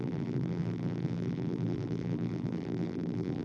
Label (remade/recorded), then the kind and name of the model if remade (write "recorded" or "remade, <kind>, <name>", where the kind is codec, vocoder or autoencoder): remade, vocoder, BigVGAN v2